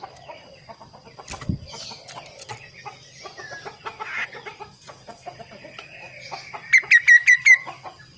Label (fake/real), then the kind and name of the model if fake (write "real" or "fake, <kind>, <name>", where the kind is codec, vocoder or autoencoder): real